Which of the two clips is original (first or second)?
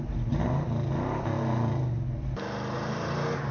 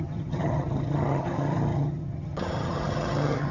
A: first